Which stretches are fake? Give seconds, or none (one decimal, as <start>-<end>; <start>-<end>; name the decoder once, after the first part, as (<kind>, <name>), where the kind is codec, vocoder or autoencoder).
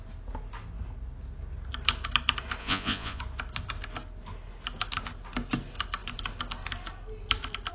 2.6-3.2 (vocoder, Vocos)